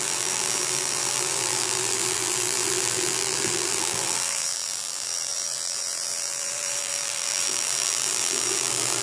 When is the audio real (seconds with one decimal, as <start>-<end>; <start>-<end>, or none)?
none